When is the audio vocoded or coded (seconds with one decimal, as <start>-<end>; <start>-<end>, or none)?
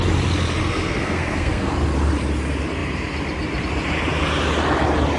0.6-1.7